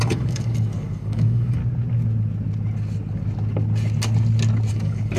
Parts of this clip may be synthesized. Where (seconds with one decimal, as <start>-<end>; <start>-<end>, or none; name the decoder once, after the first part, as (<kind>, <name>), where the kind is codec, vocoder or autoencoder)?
0.0-1.6 (codec, DAC); 4.7-5.2